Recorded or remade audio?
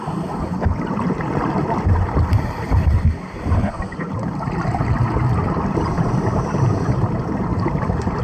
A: remade